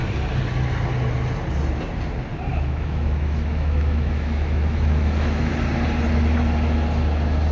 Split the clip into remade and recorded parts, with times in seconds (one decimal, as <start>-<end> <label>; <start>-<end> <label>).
0.0-2.5 recorded; 2.5-5.5 remade; 5.5-7.5 recorded